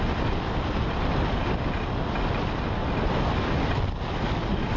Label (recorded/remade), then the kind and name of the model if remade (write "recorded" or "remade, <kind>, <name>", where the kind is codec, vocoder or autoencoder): recorded